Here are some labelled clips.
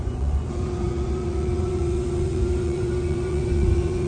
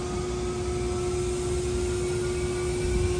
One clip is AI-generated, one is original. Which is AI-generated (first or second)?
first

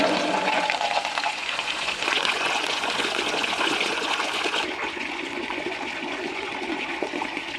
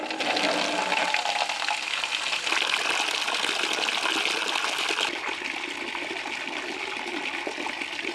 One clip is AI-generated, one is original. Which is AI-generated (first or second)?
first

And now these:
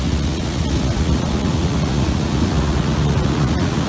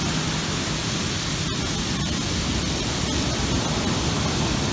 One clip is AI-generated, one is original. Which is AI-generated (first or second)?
first